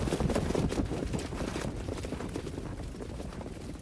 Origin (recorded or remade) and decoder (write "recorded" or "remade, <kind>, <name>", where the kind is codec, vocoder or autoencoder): remade, vocoder, BigVGAN v2